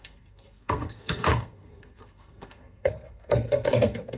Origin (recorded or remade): remade